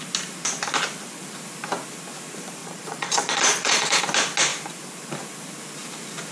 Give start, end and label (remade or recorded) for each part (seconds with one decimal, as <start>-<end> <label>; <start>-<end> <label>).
0.0-2.6 recorded; 2.6-4.0 remade; 4.0-6.3 recorded

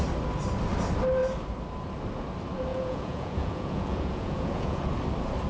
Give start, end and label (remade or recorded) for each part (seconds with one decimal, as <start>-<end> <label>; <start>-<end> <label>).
0.0-2.7 recorded; 2.7-4.8 remade; 4.8-5.5 recorded

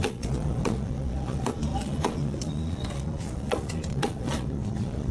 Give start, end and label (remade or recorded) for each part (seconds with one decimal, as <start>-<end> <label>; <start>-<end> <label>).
0.0-5.1 remade

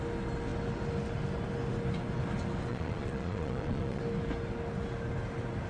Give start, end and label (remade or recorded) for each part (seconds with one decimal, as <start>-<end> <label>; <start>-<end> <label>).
0.0-2.7 recorded; 2.7-4.0 remade; 4.0-5.7 recorded

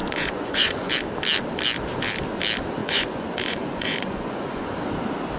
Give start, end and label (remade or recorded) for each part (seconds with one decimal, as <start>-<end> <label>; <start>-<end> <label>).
0.0-0.9 remade; 0.9-2.8 recorded; 2.8-4.7 remade; 4.7-5.4 recorded

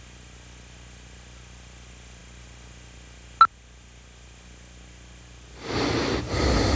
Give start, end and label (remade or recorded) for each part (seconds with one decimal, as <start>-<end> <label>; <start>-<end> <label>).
0.0-6.8 recorded

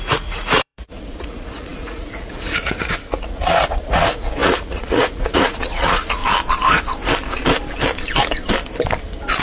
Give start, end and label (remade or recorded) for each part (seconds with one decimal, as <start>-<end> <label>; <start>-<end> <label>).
0.0-6.2 remade; 6.2-9.4 recorded